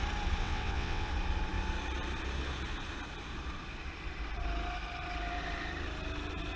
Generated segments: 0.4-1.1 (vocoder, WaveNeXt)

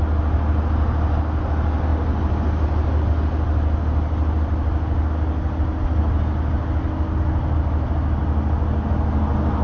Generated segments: none

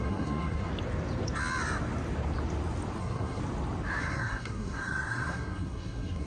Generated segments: 0.0-0.7 (codec, SNAC); 3.0-3.4; 4.0-6.3